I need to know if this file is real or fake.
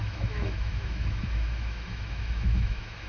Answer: fake